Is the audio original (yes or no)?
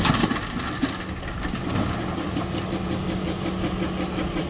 yes